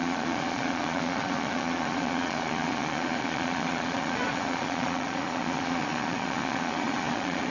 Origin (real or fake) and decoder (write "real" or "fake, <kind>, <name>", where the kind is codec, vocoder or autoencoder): fake, vocoder, Vocos